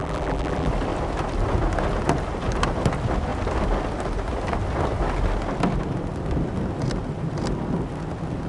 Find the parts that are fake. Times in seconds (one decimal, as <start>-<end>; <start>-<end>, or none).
0.0-0.7